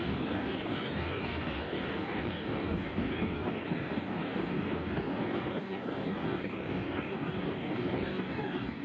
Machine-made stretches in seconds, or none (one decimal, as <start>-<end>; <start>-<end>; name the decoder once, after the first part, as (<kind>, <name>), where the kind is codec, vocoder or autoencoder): 0.0-8.8 (codec, DAC)